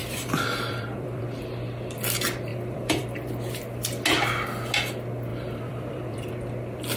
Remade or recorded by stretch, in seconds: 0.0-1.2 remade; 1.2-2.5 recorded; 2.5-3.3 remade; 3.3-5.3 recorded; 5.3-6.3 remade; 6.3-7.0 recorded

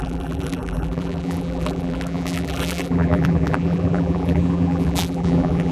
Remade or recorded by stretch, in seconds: 0.0-5.7 remade

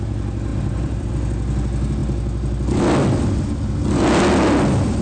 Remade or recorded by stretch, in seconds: 0.0-0.5 recorded; 0.5-1.1 remade; 1.1-5.0 recorded

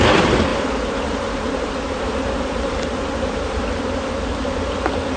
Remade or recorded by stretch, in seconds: 0.0-0.5 recorded; 0.5-3.6 remade; 3.6-5.2 recorded